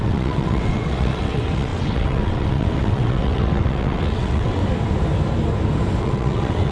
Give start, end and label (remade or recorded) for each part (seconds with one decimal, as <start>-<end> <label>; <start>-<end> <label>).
0.0-4.6 remade; 4.6-6.0 recorded; 6.0-6.7 remade